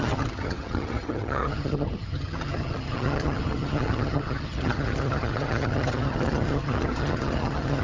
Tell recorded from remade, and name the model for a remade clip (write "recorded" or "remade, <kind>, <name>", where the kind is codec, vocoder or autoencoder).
remade, vocoder, HiFi-GAN